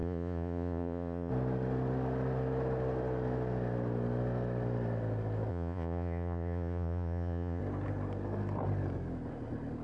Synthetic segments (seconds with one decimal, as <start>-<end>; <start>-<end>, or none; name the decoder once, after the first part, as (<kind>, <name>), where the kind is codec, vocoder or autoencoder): 0.0-1.3 (vocoder, Vocos); 5.5-7.6